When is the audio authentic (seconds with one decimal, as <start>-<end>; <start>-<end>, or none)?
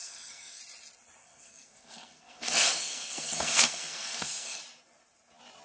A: 0.6-1.2; 4.6-5.6